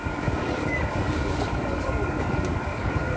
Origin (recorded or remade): remade